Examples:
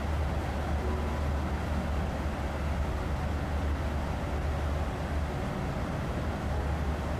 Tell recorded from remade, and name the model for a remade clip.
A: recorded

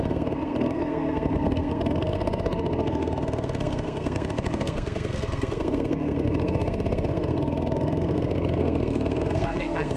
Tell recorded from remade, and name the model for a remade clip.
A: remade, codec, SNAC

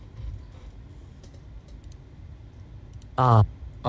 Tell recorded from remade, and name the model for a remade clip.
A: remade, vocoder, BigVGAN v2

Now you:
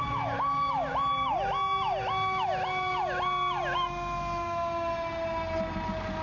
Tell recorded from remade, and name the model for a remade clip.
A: recorded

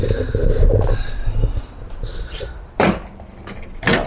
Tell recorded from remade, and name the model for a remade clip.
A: recorded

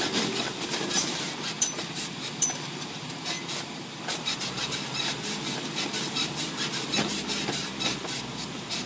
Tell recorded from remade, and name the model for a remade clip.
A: remade, vocoder, BigVGAN v2